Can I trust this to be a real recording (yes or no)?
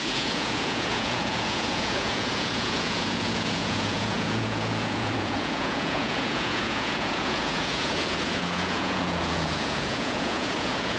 no